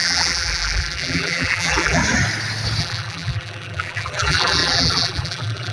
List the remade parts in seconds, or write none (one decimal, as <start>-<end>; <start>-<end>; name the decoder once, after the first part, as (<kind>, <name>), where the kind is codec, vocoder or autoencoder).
0.0-2.0 (vocoder, BigVGAN v2); 2.8-5.7